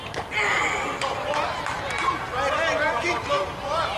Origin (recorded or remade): recorded